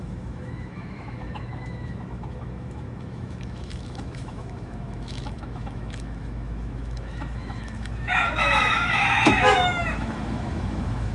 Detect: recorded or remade remade